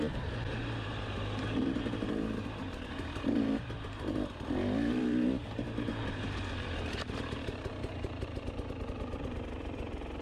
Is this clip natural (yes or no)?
no